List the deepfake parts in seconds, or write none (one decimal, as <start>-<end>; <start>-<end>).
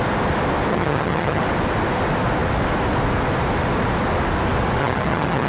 0.7-1.4; 4.8-5.5